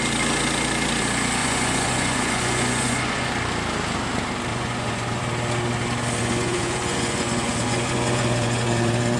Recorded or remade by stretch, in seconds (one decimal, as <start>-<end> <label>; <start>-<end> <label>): 0.0-1.4 recorded; 1.4-3.3 remade; 3.3-4.5 recorded; 4.5-5.2 remade; 5.2-6.2 recorded; 6.2-9.2 remade